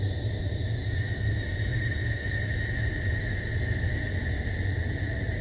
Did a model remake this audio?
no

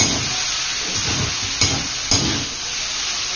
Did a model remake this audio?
no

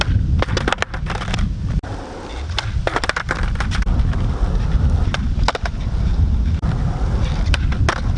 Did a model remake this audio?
no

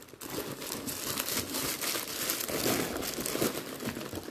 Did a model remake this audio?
no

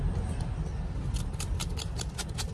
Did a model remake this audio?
no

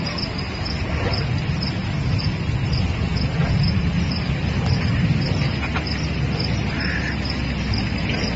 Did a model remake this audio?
no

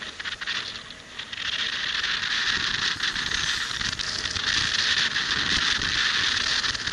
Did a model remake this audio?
no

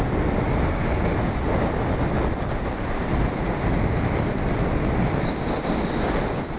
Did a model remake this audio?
no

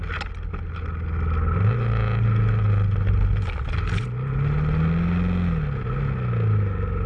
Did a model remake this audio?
no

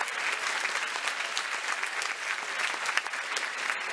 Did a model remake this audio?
no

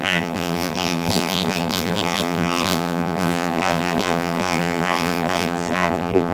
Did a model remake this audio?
yes